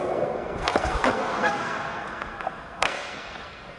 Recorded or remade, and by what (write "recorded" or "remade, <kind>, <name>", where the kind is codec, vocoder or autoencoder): remade, codec, SNAC